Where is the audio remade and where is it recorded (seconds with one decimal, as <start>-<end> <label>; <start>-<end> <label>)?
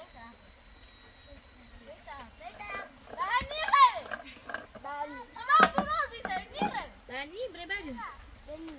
0.0-8.8 recorded